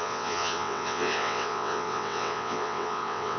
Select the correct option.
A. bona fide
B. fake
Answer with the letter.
B